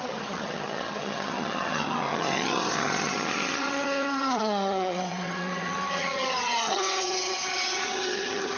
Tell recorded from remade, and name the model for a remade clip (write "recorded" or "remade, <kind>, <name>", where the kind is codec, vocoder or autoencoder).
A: remade, vocoder, HiFi-GAN